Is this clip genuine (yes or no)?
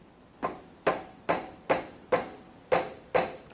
yes